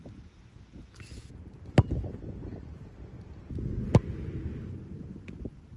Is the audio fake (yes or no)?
no